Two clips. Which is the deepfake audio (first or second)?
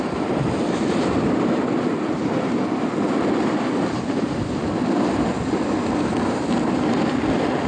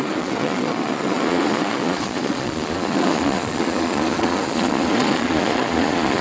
second